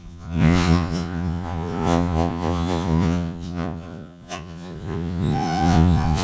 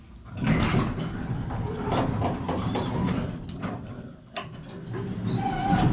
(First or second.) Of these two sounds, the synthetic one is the first